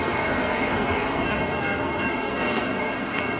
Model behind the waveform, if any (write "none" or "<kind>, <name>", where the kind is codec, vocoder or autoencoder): codec, SNAC